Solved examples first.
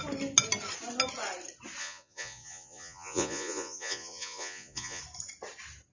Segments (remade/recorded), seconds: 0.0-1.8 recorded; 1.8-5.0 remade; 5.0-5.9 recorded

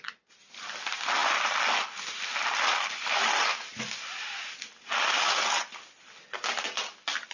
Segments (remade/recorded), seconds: 0.0-7.3 recorded